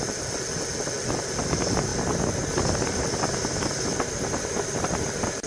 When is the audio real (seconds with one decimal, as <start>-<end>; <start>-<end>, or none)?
0.0-1.9